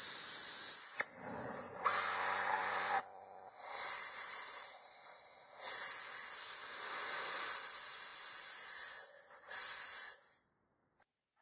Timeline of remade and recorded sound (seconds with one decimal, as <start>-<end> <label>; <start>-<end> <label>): 0.0-11.4 recorded

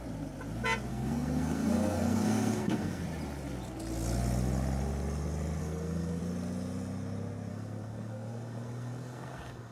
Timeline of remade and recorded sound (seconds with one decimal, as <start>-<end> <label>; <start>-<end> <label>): 0.0-0.9 recorded; 0.9-3.0 remade; 3.0-5.6 recorded; 5.6-6.2 remade; 6.2-7.5 recorded; 7.5-9.7 remade